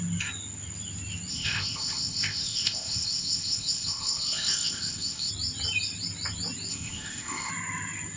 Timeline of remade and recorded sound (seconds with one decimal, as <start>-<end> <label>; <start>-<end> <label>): 0.0-1.3 recorded; 1.3-5.3 remade; 5.3-6.7 recorded; 6.7-7.5 remade; 7.5-8.2 recorded